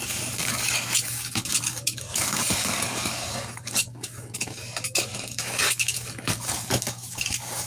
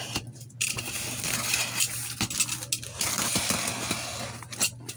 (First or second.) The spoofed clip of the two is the first